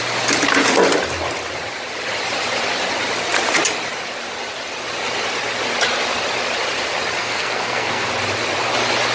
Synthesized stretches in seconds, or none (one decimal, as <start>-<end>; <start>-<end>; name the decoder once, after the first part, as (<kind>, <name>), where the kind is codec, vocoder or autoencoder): 7.2-8.1 (codec, SNAC)